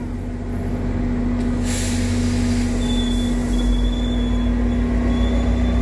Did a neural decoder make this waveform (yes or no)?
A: no